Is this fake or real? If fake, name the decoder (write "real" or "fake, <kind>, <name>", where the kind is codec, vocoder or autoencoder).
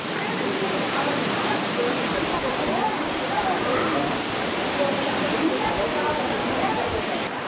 fake, vocoder, BigVGAN v2